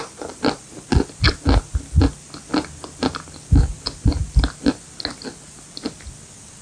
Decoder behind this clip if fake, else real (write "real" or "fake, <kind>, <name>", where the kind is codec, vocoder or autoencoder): real